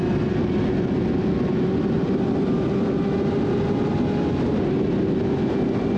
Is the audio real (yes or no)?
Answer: yes